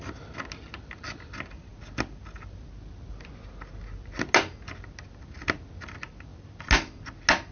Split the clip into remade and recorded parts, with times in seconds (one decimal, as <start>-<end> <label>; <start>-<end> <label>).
0.0-7.5 recorded